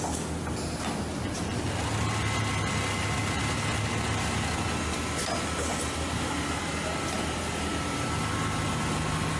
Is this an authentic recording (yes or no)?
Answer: yes